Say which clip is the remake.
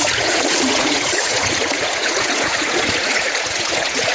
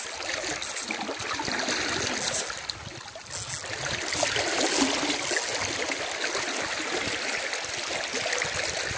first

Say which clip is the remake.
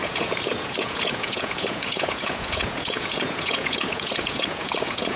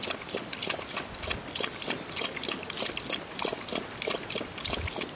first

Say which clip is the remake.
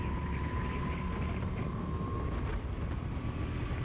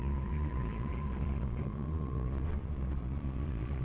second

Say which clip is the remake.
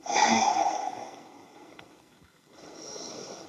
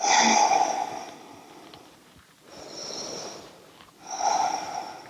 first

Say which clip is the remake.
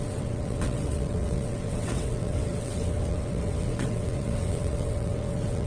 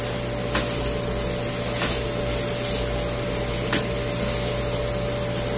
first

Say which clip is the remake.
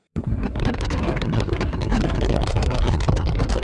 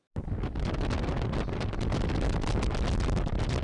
first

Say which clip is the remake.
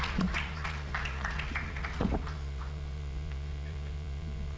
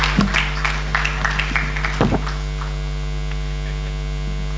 first